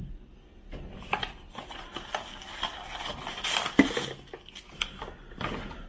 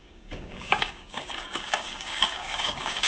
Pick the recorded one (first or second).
first